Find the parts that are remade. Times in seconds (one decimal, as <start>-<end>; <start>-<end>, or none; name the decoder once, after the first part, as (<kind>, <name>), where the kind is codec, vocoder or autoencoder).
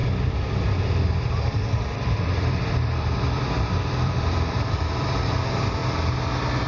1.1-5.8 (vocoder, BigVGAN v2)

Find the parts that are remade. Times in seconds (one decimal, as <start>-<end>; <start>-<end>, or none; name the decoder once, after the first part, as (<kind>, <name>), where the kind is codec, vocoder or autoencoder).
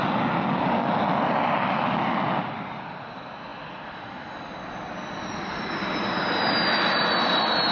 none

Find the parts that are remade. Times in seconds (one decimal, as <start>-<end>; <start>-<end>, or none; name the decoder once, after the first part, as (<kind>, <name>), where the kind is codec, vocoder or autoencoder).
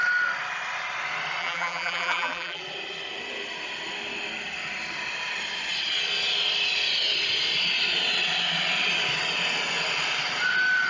1.4-2.6 (vocoder, BigVGAN v2)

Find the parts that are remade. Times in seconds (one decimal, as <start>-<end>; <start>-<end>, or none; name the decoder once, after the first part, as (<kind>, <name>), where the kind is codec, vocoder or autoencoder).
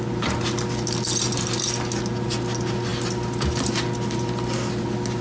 none